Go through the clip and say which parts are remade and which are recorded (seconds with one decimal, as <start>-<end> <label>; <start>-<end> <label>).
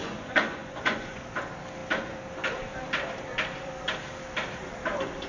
0.0-1.2 remade; 1.2-5.3 recorded